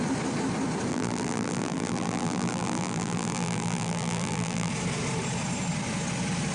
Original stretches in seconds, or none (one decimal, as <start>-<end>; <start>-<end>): 0.0-0.9; 4.7-6.5